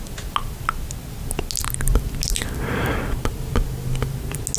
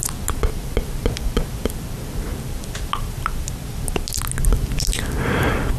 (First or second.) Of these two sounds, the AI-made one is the second